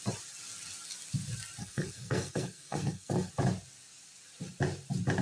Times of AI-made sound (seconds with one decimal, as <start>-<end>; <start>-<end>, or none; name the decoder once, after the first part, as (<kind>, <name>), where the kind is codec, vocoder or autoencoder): 1.6-3.3 (codec, SNAC)